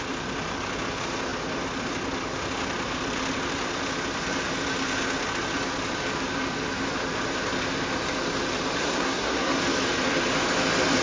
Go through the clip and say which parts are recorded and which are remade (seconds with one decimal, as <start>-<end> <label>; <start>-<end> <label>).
0.0-8.8 recorded; 8.8-9.6 remade; 9.6-11.0 recorded